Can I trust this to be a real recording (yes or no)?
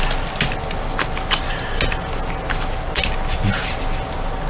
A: yes